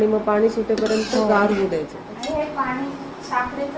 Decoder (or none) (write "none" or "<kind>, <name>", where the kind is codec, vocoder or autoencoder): none